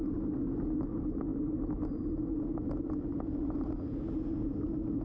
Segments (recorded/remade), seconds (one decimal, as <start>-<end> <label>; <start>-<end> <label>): 0.0-1.3 recorded; 1.3-2.1 remade; 2.1-3.1 recorded; 3.1-3.8 remade; 3.8-5.0 recorded